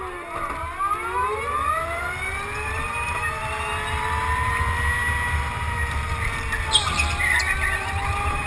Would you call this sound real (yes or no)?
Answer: yes